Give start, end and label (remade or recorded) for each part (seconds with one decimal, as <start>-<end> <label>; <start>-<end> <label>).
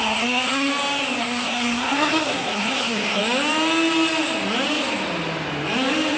0.0-0.7 remade; 0.7-1.2 recorded; 1.2-3.2 remade; 3.2-6.2 recorded